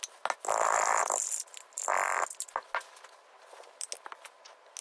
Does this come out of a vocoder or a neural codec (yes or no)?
no